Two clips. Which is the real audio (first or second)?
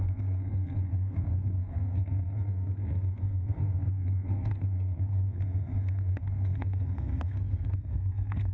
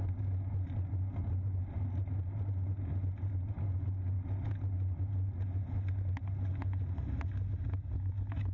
second